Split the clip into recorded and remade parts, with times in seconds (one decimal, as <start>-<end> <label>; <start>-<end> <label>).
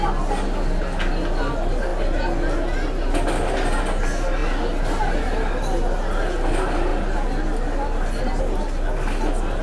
0.0-9.6 recorded